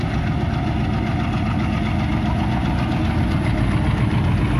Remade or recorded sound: recorded